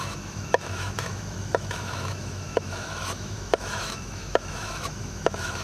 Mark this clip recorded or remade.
remade